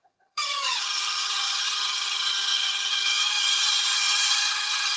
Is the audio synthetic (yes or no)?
yes